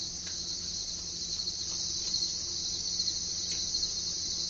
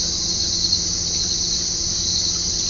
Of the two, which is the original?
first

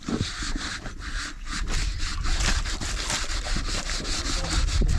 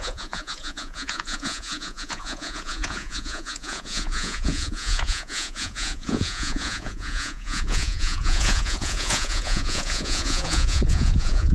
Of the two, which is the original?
first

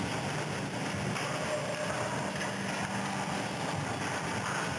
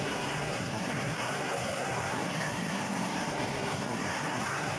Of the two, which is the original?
first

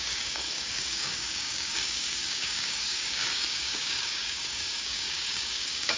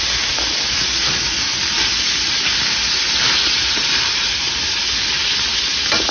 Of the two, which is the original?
second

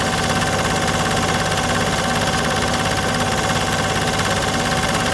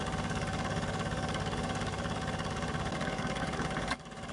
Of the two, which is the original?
first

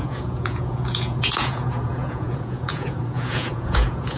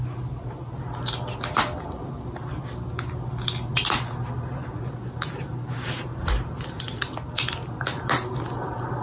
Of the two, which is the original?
second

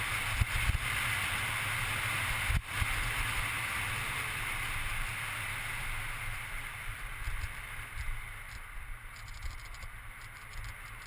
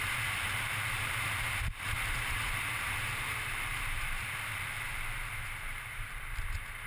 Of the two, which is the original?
first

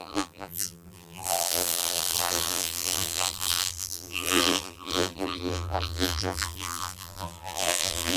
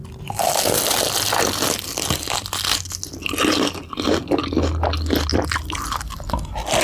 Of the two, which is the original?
second